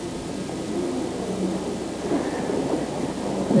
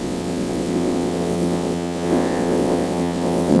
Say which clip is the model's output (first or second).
second